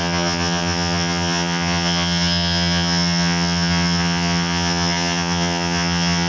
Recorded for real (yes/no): no